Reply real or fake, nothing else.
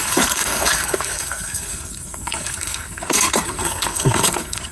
fake